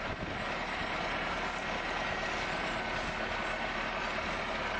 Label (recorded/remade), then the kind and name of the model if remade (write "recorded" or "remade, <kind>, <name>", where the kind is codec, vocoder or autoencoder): recorded